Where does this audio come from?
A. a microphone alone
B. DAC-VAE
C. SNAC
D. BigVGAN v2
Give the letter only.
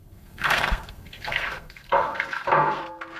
C